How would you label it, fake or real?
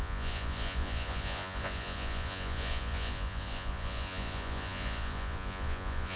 fake